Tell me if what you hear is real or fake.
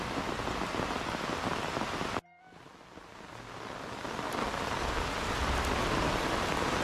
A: real